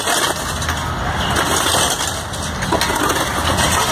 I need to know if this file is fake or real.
real